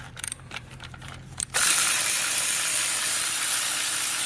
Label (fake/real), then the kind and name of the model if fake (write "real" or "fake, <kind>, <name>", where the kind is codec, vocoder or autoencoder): fake, vocoder, BigVGAN v2